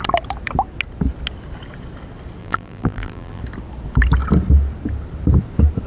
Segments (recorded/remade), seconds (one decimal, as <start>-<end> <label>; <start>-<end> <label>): 0.0-2.4 recorded; 2.4-3.4 remade; 3.4-5.9 recorded